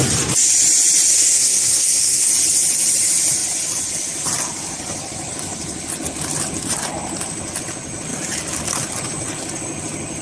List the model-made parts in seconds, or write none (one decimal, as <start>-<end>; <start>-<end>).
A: 1.1-2.3